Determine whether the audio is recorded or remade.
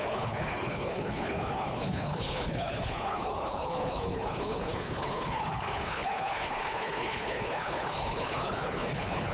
remade